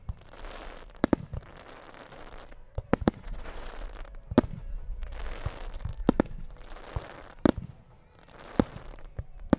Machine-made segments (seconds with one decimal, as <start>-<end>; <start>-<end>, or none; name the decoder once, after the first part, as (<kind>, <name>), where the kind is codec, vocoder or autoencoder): 2.5-3.7 (vocoder, WaveNeXt)